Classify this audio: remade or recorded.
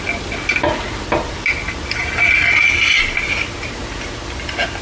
recorded